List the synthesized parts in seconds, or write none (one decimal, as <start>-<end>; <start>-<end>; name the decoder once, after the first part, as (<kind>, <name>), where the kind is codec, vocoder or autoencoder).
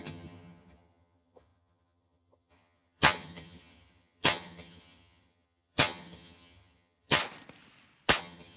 0.0-7.2 (vocoder, HiFi-GAN); 8.2-8.6